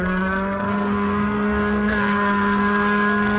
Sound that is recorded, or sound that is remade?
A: remade